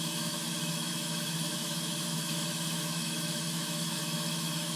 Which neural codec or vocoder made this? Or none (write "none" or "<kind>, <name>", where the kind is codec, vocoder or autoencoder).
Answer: autoencoder, DAC-VAE